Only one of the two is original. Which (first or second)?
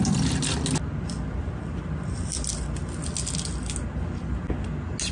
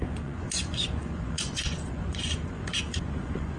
first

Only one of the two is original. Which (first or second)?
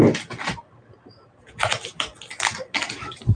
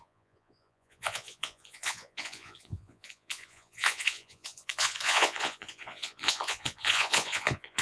first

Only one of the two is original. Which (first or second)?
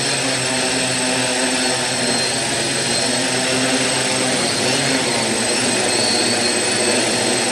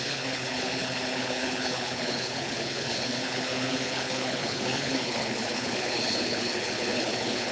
first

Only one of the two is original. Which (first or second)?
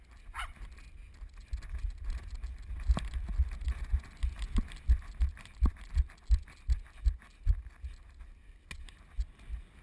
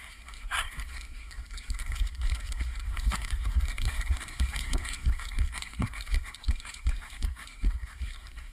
first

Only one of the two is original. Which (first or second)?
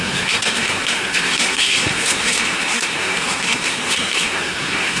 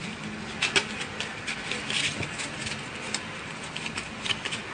second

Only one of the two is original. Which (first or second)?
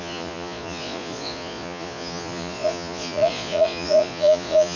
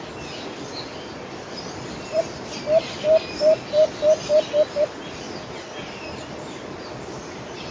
second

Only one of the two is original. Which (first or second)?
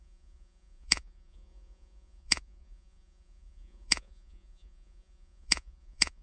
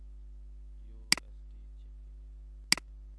second